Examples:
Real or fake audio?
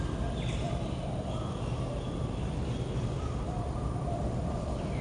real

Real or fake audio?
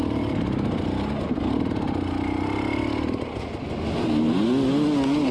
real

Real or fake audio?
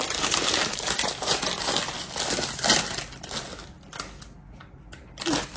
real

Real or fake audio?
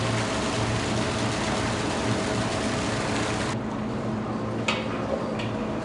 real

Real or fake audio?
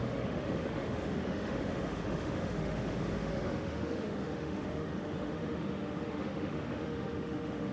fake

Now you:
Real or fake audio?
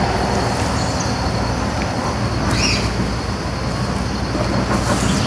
real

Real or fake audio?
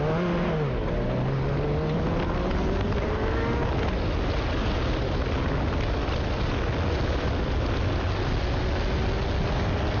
real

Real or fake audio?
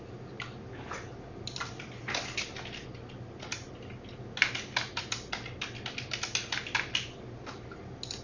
real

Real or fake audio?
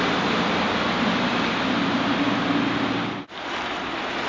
real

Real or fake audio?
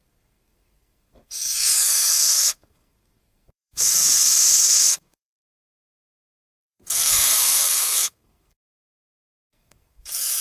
fake